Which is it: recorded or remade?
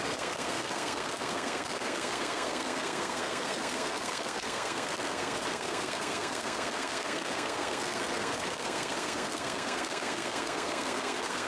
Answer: remade